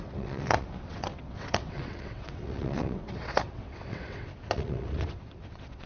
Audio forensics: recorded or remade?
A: remade